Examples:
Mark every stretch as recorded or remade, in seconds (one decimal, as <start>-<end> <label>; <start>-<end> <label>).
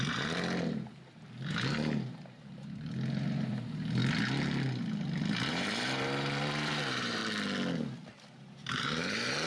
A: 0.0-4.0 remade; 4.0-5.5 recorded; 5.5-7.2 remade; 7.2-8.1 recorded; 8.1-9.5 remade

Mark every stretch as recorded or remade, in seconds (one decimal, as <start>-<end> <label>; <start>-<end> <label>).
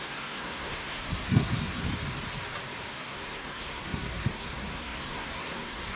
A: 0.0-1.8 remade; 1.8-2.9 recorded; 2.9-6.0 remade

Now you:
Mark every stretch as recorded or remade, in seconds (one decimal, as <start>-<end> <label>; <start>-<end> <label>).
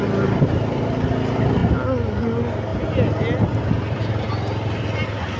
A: 0.0-5.4 recorded